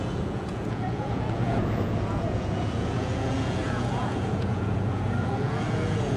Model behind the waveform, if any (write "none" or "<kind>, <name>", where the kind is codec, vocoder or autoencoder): vocoder, Vocos